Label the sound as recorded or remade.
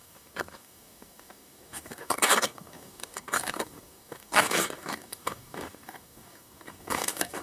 remade